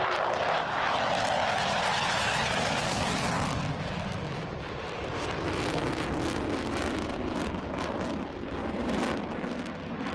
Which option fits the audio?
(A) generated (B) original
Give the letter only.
A